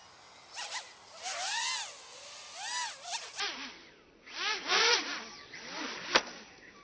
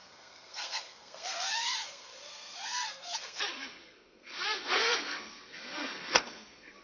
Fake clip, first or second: second